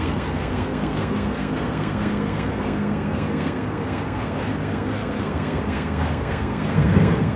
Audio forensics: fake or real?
fake